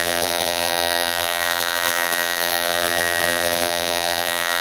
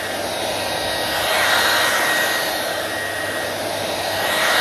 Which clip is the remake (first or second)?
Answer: first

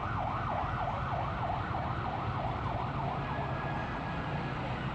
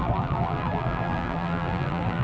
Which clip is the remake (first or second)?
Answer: second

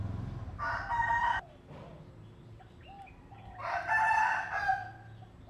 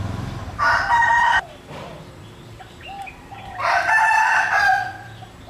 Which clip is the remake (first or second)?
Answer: second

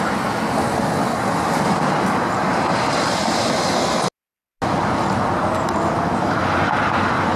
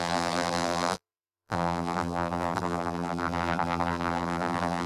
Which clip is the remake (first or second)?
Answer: second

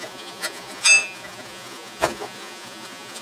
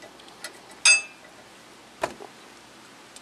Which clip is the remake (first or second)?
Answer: first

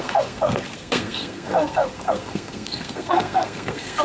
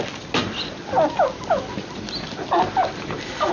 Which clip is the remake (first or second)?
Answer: first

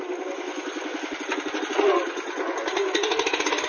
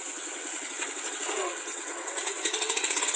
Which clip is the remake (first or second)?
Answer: second